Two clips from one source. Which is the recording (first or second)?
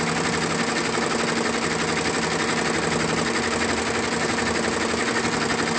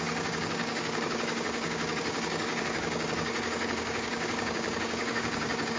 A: first